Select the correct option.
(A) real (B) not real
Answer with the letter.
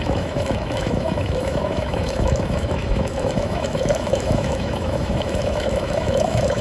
B